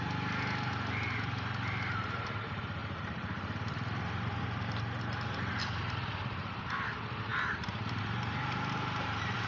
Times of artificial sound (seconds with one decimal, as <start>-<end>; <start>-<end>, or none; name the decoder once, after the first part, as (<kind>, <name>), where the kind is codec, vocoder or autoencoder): 0.0-9.5 (vocoder, BigVGAN v2)